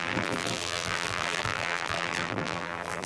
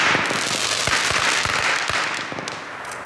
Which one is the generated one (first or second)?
first